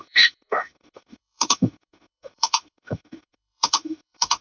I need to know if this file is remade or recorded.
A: remade